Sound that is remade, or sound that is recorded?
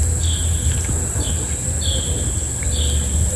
recorded